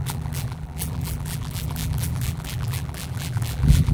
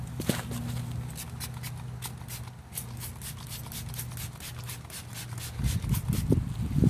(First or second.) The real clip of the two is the second